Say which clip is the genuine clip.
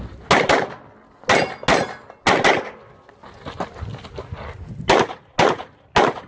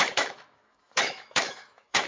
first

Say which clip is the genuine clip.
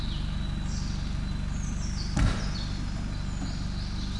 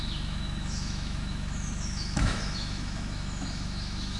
first